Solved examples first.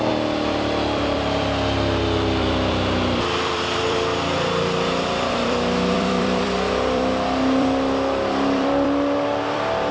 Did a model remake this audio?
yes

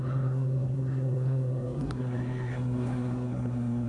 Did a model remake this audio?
yes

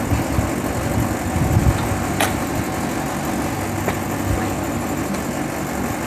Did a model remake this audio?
no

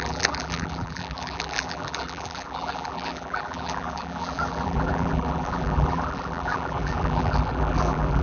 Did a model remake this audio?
yes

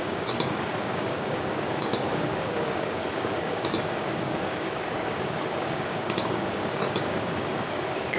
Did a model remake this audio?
yes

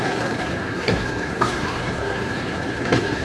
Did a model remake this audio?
yes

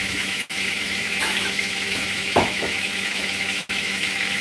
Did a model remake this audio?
yes